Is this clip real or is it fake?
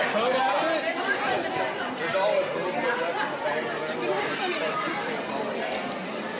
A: real